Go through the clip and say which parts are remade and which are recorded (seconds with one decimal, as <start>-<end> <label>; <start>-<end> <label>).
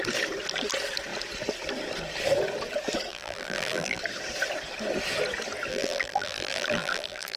0.0-3.1 recorded; 3.1-4.0 remade; 4.0-5.7 recorded; 5.7-7.4 remade